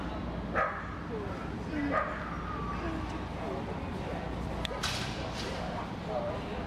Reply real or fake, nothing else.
real